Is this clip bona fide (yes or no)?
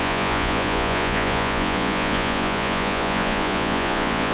no